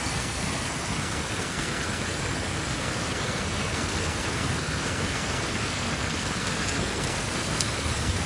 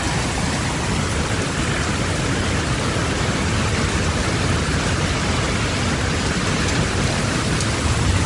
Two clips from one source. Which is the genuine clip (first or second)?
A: second